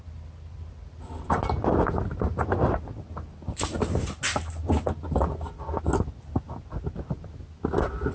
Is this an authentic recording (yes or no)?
yes